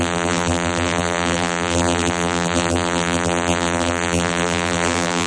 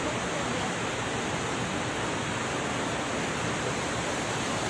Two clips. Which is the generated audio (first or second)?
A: first